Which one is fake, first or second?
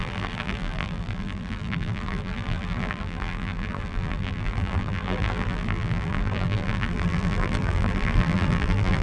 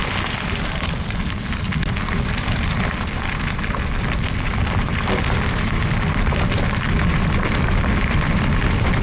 first